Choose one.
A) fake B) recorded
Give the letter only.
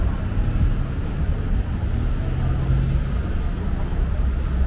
B